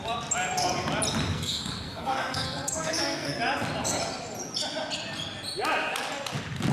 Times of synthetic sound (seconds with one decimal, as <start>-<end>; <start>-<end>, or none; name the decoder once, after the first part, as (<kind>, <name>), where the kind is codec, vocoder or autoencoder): 1.3-3.4 (codec, SNAC)

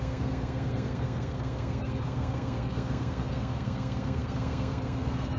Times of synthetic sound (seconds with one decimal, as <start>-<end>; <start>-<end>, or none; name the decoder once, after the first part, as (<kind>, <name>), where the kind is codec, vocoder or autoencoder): 0.0-5.4 (codec, SNAC)